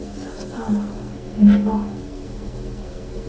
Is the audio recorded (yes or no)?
no